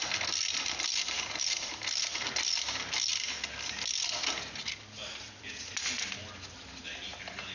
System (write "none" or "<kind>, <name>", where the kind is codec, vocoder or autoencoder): none